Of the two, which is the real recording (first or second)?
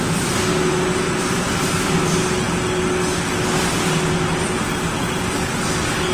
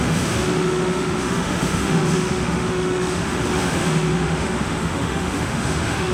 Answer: first